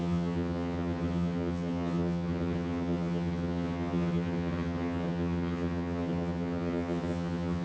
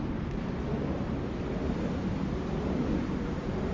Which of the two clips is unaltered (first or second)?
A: second